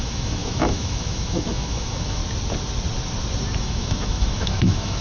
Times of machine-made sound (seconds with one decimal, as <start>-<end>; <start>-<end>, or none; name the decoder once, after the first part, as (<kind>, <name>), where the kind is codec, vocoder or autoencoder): 0.0-2.2 (autoencoder, DAC-VAE); 3.6-5.0